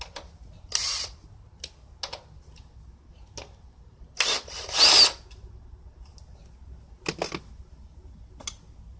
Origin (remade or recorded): recorded